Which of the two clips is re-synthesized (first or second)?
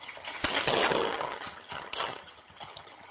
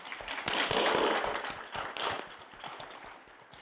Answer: first